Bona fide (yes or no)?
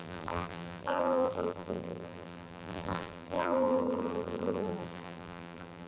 no